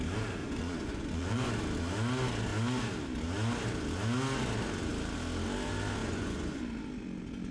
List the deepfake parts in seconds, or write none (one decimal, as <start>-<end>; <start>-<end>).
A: 0.4-1.5; 6.0-6.6